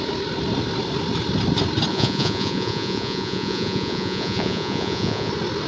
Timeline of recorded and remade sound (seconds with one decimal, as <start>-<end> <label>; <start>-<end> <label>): 0.0-1.9 recorded; 1.9-5.3 remade; 5.3-5.7 recorded